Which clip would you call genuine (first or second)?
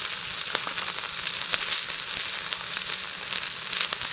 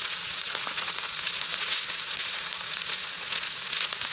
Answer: first